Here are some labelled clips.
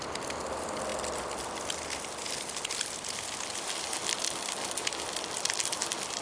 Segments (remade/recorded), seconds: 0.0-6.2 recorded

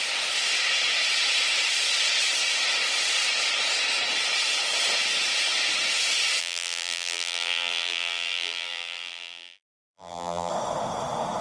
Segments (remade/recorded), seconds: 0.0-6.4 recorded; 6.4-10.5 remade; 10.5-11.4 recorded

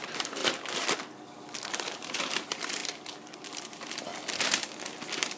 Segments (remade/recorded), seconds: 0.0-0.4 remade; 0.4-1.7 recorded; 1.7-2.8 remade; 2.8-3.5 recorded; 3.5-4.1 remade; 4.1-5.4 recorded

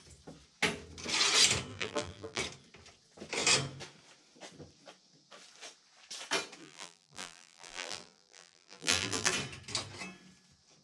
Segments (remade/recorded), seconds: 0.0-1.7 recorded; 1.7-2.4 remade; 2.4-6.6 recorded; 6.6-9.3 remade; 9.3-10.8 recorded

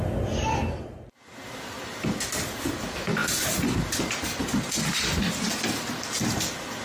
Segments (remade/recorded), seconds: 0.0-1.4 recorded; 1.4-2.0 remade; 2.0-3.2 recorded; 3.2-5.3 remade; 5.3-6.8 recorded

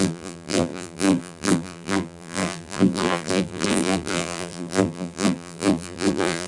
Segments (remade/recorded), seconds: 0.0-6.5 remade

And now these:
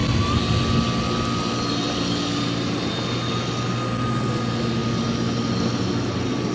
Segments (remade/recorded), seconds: 0.0-6.5 recorded

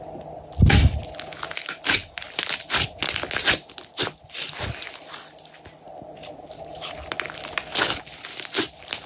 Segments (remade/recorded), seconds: 0.0-9.1 recorded